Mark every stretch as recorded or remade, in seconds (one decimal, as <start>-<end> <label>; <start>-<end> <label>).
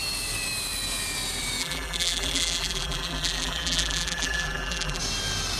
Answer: 0.0-1.6 recorded; 1.6-5.0 remade; 5.0-5.6 recorded